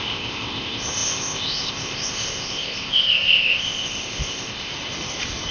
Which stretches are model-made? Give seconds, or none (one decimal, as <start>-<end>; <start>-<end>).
0.0-4.7